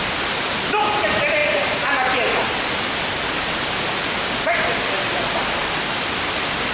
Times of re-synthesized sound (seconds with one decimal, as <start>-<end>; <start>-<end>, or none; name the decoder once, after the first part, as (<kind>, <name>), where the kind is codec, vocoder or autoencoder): none